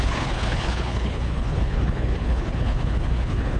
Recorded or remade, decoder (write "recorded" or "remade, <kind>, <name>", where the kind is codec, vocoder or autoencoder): remade, codec, HILCodec